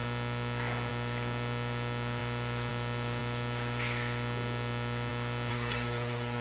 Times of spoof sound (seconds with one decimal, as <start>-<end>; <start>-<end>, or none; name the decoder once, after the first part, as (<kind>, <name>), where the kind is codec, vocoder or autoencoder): 5.5-6.4 (codec, SNAC)